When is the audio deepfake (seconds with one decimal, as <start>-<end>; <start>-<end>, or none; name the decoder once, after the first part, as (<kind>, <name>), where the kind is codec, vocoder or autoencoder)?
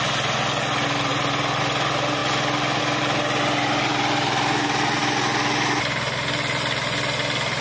none